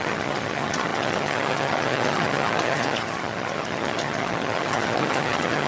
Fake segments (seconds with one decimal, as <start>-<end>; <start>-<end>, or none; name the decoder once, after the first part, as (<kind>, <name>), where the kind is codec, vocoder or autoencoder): 0.0-5.7 (vocoder, HiFi-GAN)